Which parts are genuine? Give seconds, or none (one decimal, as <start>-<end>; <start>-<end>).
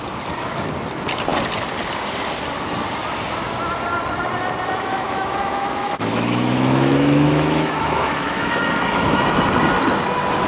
0.0-4.9; 8.7-10.5